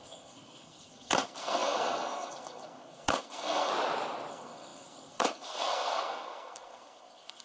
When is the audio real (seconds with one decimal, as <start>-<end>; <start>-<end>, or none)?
3.7-4.3